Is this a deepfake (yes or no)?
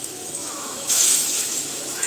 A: yes